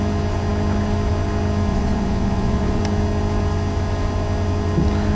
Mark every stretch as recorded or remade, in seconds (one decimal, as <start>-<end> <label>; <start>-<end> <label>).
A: 0.0-1.7 recorded; 1.7-2.8 remade; 2.8-5.1 recorded